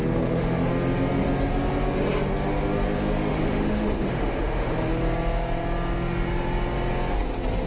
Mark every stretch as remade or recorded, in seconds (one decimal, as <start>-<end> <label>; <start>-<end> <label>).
0.0-0.7 remade; 0.7-3.3 recorded; 3.3-4.9 remade; 4.9-7.7 recorded